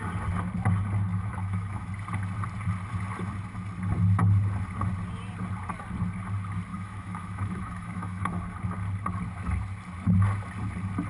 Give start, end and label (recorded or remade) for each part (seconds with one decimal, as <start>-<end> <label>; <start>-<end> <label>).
0.0-1.1 recorded; 1.1-1.9 remade; 1.9-6.7 recorded; 6.7-8.4 remade; 8.4-11.1 recorded